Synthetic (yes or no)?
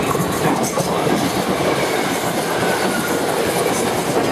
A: no